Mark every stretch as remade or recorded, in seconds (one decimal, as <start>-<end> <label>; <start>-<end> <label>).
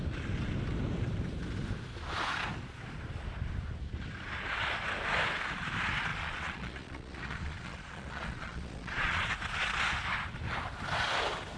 0.0-6.1 recorded; 6.1-9.3 remade; 9.3-11.6 recorded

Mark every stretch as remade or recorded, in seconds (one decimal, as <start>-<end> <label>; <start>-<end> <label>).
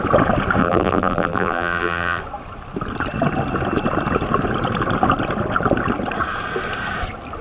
0.0-0.6 recorded; 0.6-2.2 remade; 2.2-7.4 recorded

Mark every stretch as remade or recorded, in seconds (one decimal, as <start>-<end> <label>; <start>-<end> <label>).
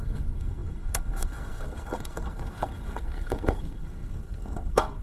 0.0-5.0 remade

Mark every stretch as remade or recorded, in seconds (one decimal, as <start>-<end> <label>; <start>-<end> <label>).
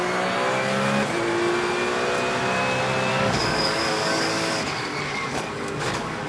0.0-3.1 recorded; 3.1-6.3 remade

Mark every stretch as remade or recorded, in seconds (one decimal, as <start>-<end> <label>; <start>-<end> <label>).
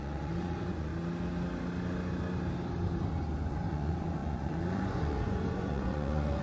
0.0-0.9 remade; 0.9-3.5 recorded; 3.5-6.4 remade